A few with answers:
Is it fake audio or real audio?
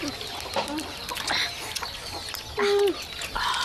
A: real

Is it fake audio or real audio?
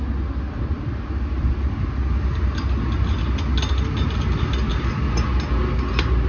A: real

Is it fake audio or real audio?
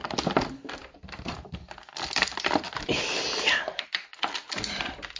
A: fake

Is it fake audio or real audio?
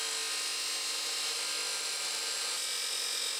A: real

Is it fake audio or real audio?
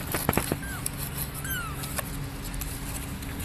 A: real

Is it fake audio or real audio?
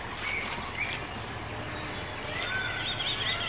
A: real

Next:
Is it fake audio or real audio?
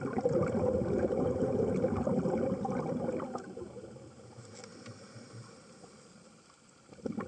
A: real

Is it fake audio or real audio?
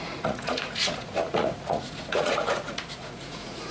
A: fake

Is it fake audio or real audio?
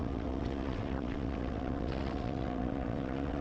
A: fake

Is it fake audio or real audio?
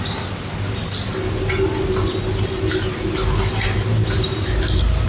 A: real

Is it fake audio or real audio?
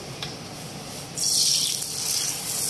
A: real